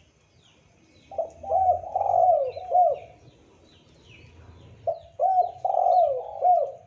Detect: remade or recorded recorded